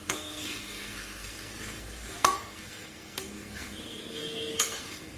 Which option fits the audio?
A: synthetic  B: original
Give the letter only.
A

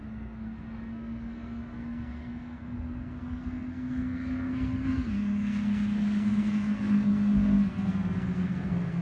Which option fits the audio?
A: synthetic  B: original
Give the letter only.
A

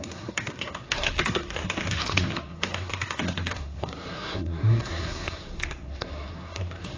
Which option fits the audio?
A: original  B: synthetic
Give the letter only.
B